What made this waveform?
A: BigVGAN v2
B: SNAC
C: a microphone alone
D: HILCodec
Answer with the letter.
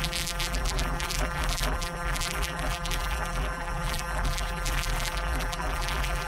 A